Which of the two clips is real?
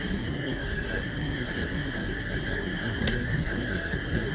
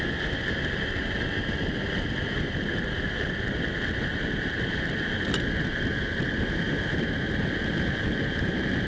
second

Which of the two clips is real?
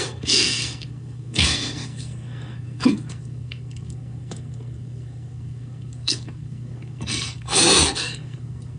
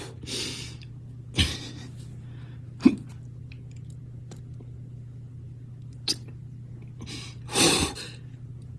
second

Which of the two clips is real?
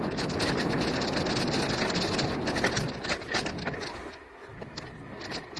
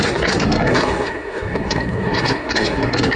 first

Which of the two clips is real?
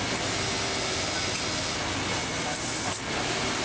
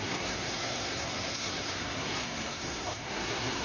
first